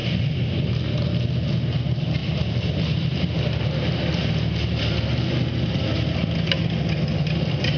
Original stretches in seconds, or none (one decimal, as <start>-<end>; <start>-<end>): 0.0-7.8

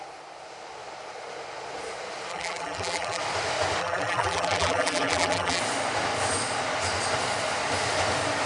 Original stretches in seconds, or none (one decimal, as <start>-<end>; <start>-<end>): 0.0-2.3; 3.2-3.8; 5.6-8.5

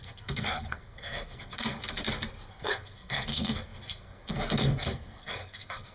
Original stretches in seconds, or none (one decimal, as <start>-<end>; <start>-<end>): 1.8-2.5

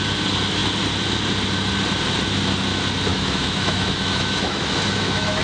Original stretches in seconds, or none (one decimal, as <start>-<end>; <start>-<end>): 0.0-3.1

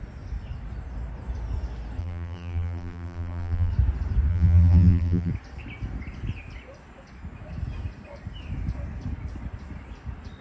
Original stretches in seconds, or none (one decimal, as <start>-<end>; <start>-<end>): 0.0-2.0; 3.7-4.3; 5.3-10.4